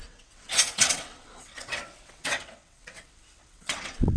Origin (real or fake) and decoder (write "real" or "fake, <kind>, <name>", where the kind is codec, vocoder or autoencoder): fake, vocoder, WaveNeXt